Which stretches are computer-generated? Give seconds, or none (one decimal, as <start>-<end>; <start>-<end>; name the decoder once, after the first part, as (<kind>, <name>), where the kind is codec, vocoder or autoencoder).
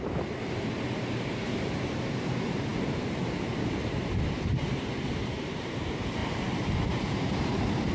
0.0-7.9 (vocoder, BigVGAN v2)